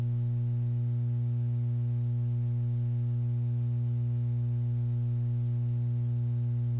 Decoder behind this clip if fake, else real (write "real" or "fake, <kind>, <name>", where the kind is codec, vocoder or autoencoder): real